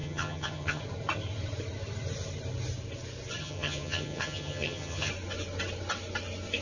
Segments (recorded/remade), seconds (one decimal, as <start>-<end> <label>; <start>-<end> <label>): 0.0-0.8 remade; 0.8-3.4 recorded; 3.4-5.1 remade; 5.1-6.6 recorded